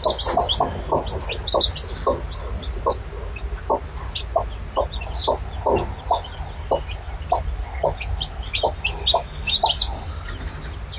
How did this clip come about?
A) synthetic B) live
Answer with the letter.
B